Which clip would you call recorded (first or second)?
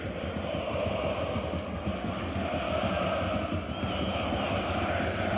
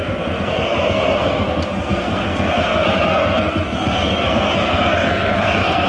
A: first